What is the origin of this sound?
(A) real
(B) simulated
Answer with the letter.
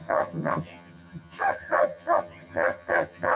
B